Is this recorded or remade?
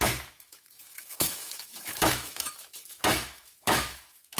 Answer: remade